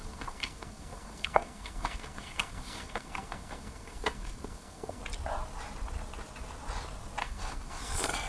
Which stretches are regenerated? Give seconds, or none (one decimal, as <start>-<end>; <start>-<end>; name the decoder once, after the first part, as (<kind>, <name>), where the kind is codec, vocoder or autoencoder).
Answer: 0.0-5.0 (codec, SNAC); 7.2-8.3